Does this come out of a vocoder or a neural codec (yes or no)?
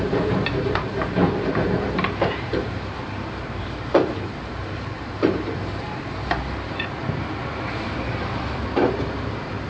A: yes